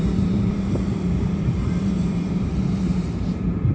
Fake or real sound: fake